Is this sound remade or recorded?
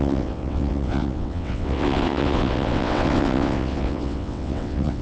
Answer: remade